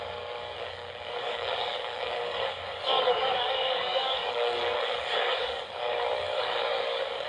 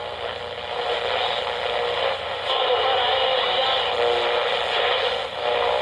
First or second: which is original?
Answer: second